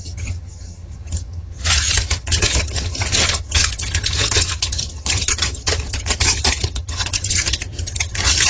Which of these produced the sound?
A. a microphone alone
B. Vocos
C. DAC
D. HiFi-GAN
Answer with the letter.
D